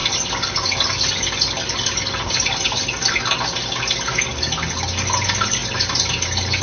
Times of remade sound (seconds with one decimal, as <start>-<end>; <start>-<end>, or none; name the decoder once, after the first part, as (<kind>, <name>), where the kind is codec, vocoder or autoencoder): none